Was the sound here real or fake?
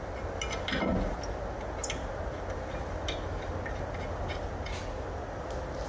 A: real